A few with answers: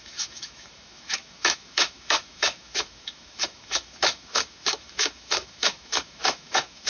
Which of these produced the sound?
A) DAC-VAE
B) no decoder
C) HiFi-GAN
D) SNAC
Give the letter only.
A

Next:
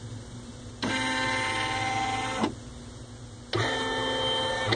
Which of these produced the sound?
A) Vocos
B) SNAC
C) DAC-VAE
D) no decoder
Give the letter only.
D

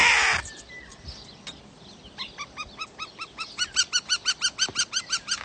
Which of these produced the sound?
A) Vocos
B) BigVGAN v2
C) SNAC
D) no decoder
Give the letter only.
D